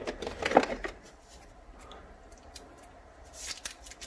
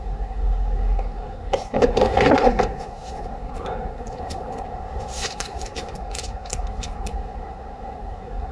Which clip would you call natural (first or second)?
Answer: first